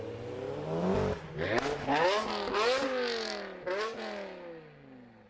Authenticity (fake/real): real